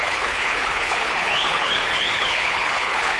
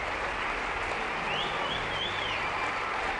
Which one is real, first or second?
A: second